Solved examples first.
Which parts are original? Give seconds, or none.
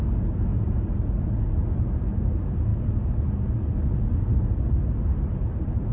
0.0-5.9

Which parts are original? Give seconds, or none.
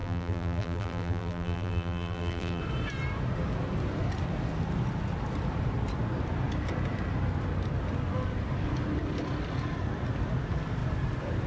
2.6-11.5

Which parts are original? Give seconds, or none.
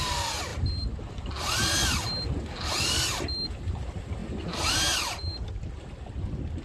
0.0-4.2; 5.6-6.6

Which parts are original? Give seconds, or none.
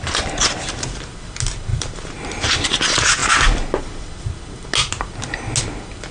0.0-1.7; 2.8-6.1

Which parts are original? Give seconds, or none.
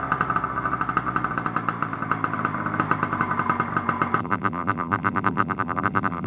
0.0-4.2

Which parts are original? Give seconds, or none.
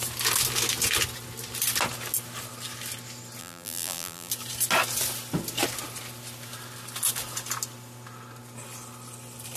0.0-3.4; 4.3-9.6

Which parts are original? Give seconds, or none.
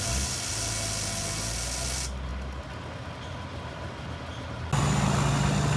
0.0-5.8